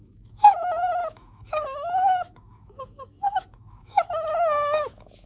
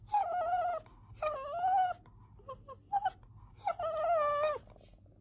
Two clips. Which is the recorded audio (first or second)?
second